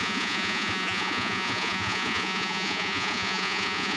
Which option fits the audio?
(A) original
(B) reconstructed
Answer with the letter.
B